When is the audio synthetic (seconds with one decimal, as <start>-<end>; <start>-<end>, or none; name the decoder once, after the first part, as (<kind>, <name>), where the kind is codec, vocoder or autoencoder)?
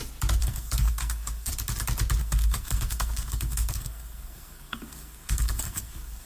0.4-1.5 (codec, SNAC); 2.2-6.3